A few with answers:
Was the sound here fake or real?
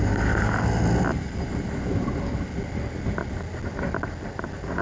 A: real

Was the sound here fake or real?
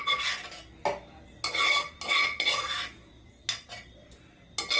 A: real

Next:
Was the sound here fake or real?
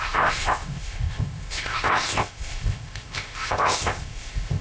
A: fake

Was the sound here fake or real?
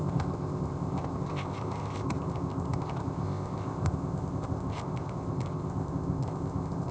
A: fake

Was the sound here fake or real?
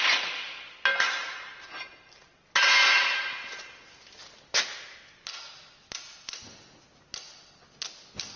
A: real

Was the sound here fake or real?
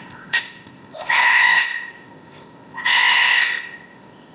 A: fake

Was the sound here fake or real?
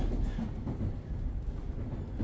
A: real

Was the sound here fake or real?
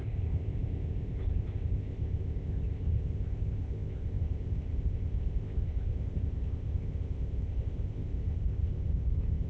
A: fake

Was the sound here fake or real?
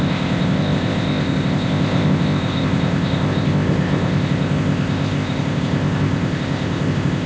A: fake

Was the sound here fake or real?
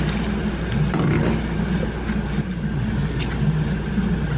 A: real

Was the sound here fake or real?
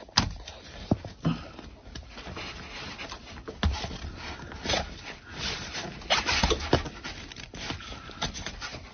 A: real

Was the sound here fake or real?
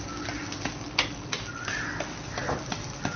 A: real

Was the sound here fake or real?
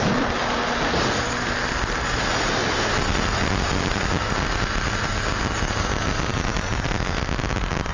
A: real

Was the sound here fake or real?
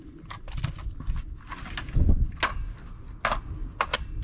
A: real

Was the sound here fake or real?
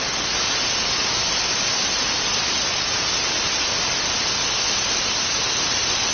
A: real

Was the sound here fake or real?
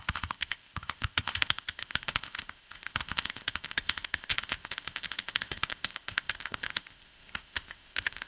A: fake